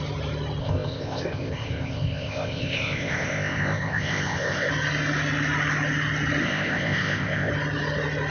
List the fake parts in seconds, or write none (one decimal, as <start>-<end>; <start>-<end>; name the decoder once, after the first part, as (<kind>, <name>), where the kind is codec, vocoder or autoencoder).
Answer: 0.6-4.7 (codec, ZipCodec); 6.4-7.5